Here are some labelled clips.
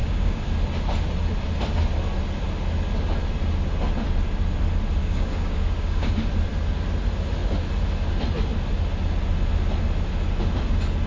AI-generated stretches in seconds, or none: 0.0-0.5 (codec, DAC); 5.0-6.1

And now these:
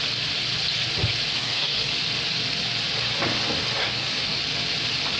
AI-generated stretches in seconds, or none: 1.4-1.9 (codec, DAC); 3.8-4.4

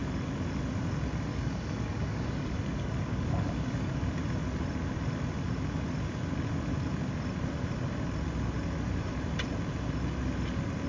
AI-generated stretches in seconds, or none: 1.3-4.1 (codec, DAC)

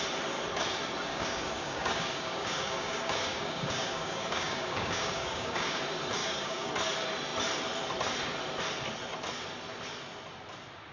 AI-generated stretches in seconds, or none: 1.1-5.8 (codec, DAC); 6.2-6.7

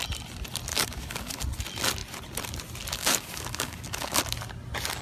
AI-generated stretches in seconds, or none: 0.7-1.4 (codec, DAC); 3.0-4.2

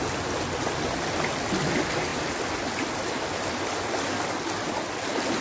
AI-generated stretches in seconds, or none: none